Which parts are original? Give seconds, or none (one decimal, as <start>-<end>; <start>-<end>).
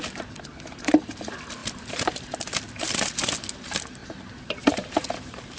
0.0-1.6; 3.3-4.0